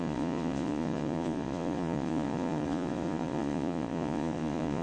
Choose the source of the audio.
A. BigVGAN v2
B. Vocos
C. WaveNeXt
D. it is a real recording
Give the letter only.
B